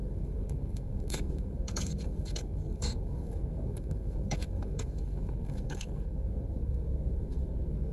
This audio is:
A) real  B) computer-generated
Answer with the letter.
B